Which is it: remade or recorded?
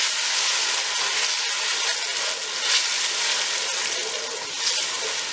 recorded